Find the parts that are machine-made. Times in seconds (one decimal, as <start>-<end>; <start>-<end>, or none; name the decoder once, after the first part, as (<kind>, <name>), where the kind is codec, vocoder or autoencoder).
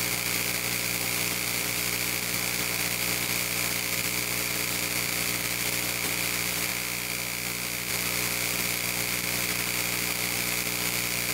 0.0-6.7 (vocoder, BigVGAN v2); 7.9-11.3